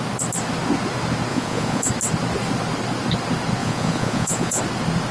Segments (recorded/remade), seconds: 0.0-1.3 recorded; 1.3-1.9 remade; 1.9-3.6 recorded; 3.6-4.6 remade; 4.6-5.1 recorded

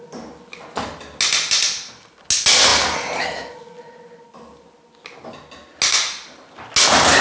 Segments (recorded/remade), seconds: 0.0-7.2 recorded